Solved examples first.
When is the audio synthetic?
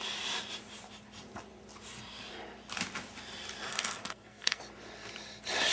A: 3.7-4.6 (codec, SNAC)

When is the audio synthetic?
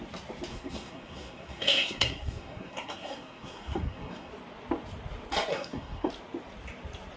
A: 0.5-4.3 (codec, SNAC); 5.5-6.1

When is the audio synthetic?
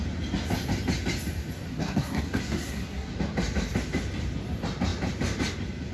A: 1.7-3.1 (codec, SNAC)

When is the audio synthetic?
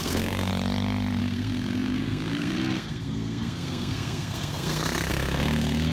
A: 0.0-0.5 (codec, SNAC); 1.2-5.9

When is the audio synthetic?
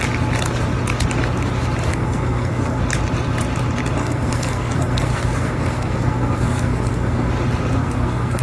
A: 1.9-2.8 (codec, SNAC); 4.0-7.3; 7.8-8.4